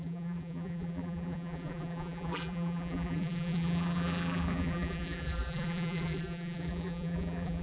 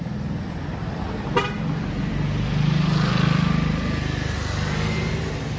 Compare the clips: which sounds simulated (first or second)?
first